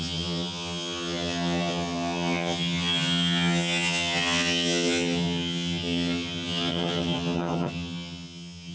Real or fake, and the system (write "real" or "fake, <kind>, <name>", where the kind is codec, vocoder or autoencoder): fake, vocoder, HiFi-GAN